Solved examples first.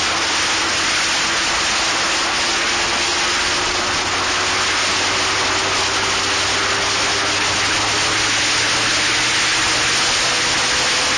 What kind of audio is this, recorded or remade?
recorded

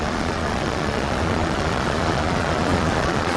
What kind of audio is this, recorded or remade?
remade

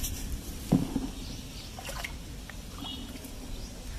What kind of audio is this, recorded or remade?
recorded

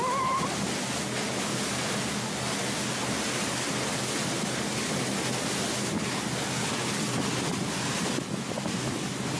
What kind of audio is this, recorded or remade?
recorded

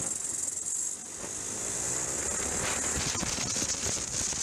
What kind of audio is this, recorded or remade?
recorded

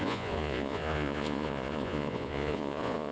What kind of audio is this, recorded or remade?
remade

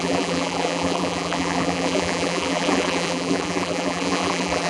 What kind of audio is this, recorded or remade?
remade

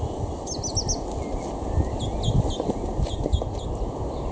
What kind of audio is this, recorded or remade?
recorded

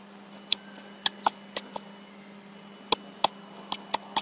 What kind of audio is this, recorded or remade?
recorded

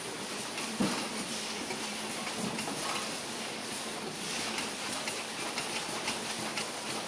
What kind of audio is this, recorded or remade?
remade